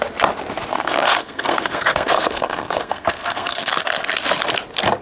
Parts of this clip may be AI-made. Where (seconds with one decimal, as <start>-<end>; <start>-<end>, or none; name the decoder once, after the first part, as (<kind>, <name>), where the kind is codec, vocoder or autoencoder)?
0.7-3.7 (codec, SNAC)

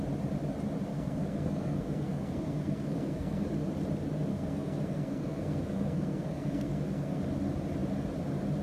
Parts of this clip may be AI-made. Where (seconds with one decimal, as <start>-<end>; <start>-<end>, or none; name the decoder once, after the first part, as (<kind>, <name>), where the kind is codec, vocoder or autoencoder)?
0.9-3.5 (codec, SNAC); 4.3-7.2

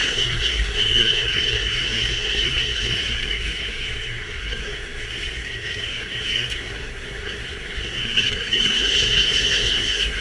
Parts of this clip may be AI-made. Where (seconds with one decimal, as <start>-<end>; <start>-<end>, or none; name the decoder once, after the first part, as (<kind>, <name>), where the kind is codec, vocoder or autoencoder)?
0.0-10.2 (codec, SNAC)

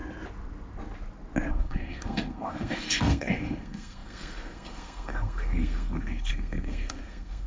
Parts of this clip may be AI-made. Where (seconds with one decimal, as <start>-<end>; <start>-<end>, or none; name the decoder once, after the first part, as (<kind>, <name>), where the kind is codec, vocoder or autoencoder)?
1.5-7.5 (codec, SNAC)